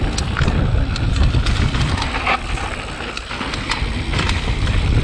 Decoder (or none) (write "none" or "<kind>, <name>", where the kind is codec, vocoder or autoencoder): none